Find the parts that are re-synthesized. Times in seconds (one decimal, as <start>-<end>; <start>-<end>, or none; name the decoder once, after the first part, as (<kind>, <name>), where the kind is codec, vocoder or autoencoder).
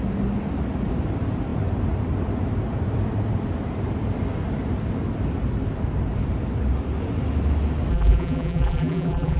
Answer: 7.9-9.4 (vocoder, BigVGAN v2)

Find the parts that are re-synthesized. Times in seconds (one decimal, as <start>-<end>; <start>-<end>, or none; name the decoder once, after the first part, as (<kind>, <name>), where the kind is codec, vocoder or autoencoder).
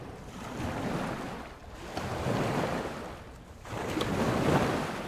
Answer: none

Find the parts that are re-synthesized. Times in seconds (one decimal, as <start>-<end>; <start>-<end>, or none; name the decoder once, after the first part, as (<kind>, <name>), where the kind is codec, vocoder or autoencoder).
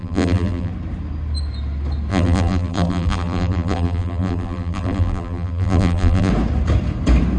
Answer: 0.0-0.7 (vocoder, BigVGAN v2); 2.1-6.3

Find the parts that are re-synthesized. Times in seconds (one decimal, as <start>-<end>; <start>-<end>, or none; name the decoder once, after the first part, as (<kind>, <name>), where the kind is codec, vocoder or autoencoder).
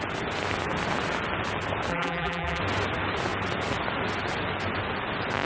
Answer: 1.9-2.6 (vocoder, BigVGAN v2)